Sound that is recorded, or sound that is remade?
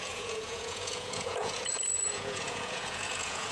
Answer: remade